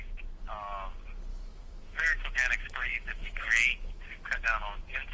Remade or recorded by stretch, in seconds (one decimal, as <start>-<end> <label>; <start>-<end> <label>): 0.0-1.3 recorded; 1.3-4.4 remade; 4.4-5.1 recorded

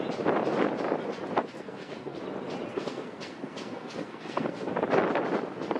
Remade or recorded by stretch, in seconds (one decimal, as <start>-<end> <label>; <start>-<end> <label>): 0.0-1.4 recorded; 1.4-2.2 remade; 2.2-2.7 recorded; 2.7-4.7 remade; 4.7-5.8 recorded